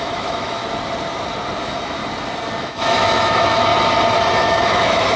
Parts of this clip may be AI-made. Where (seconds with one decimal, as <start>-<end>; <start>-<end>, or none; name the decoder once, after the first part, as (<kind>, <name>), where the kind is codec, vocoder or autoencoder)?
0.0-0.6 (autoencoder, DAC-VAE); 1.6-2.0; 2.6-3.7; 4.3-5.2